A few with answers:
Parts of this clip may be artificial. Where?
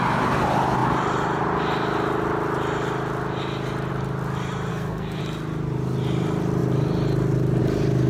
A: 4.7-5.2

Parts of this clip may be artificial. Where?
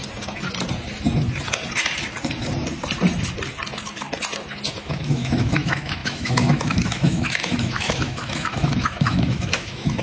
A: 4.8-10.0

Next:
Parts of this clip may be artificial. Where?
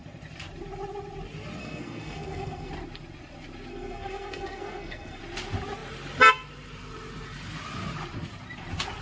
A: 1.6-2.7; 3.7-5.2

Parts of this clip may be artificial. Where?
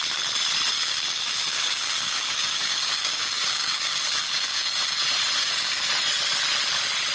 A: 0.7-5.0; 5.4-5.9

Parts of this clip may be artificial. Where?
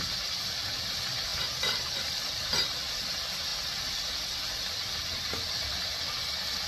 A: none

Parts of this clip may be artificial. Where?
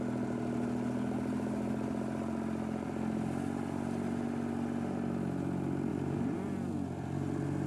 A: 5.9-6.7